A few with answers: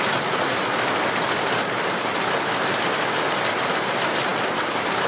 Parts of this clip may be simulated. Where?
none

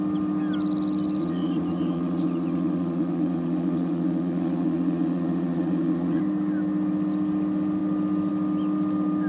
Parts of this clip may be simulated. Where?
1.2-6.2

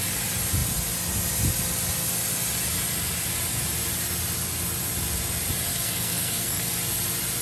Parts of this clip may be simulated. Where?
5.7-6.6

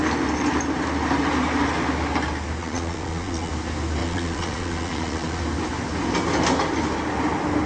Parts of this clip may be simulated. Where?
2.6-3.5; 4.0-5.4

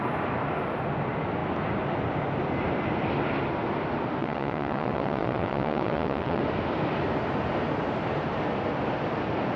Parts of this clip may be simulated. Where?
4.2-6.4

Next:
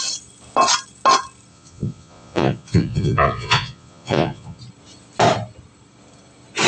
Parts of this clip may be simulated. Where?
1.5-4.6